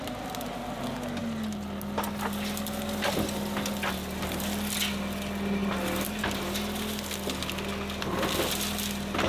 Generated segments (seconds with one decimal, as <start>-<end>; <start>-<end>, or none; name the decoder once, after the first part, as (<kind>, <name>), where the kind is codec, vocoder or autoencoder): none